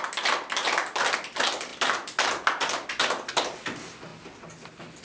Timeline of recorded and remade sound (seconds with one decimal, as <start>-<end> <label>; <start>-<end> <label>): 0.0-5.0 recorded